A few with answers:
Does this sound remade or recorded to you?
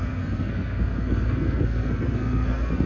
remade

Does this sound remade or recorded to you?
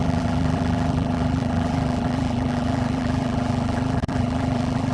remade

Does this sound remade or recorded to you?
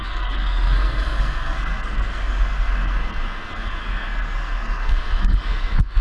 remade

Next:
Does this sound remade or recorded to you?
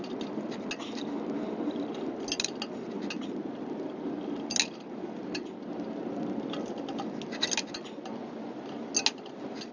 recorded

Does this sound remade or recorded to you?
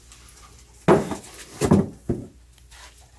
recorded